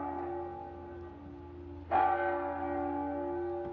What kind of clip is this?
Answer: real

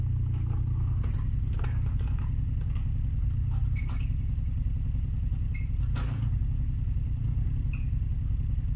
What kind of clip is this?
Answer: real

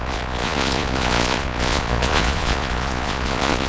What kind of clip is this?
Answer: fake